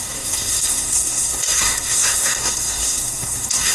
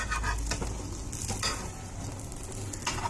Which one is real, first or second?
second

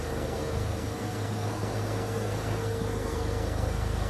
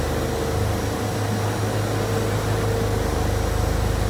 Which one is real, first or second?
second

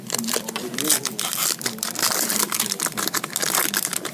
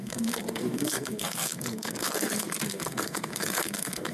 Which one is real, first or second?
first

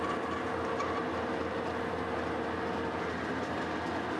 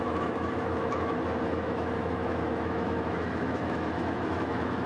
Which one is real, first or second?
first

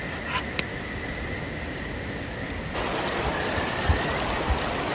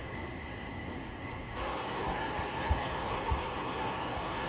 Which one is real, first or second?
first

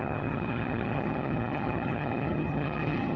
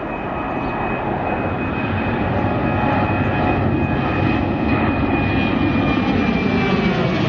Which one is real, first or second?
second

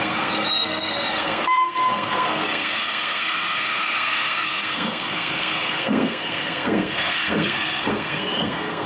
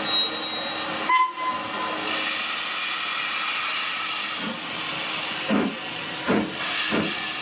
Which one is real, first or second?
second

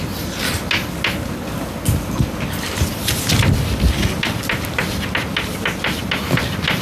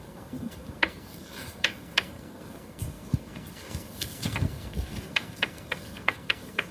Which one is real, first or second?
first